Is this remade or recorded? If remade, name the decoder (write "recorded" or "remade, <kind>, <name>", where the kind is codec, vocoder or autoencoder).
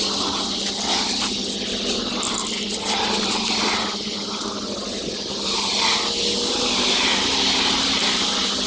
recorded